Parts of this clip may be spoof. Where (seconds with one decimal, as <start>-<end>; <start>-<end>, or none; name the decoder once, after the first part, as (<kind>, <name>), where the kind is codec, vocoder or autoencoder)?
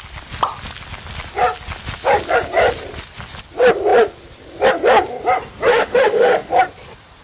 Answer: 5.7-6.5 (autoencoder, DAC-VAE)